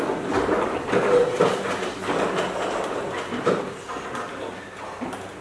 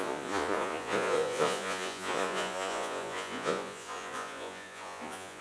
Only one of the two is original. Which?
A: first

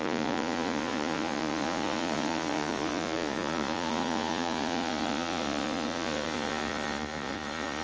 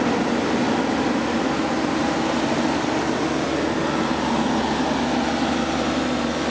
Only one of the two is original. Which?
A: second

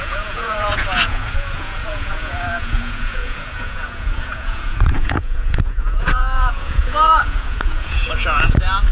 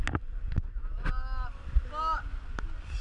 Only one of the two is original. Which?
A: second